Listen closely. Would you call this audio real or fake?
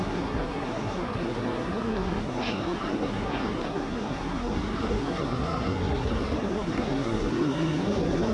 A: fake